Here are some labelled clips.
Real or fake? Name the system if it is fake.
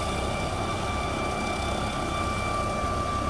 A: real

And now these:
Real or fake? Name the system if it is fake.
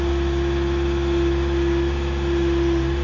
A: real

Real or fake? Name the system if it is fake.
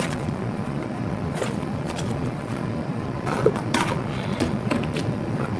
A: fake, vocoder, Vocos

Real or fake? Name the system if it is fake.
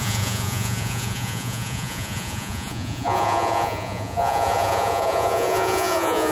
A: fake, vocoder, Vocos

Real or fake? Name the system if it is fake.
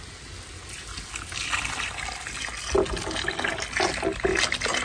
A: real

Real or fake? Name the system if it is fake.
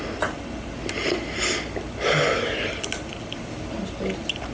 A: real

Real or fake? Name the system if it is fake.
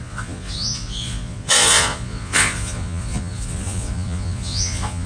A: fake, vocoder, Vocos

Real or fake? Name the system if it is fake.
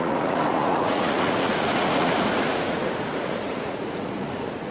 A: fake, vocoder, Vocos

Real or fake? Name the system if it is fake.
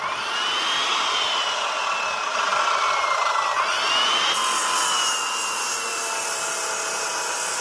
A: real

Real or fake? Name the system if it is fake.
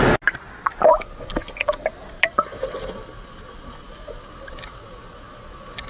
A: real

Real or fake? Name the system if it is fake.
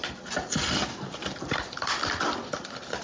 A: real